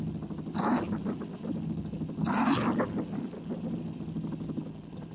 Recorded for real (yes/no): yes